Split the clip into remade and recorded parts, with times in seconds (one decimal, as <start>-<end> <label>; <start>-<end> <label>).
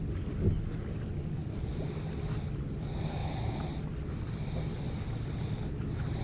0.0-6.2 recorded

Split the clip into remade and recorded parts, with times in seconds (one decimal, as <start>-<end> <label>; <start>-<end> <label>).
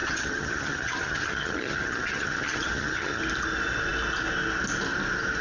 0.0-3.2 remade; 3.2-5.4 recorded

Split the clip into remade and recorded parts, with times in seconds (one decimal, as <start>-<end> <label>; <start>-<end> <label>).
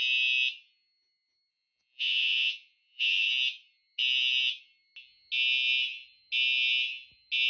0.0-1.5 recorded; 1.5-3.3 remade; 3.3-7.5 recorded